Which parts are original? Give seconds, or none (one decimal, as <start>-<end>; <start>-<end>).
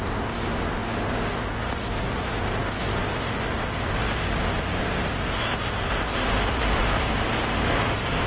2.6-4.8